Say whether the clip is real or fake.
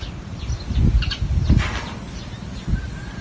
real